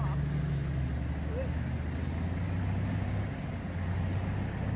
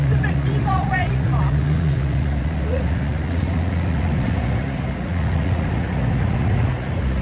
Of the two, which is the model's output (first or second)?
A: second